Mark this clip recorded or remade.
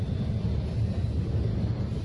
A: recorded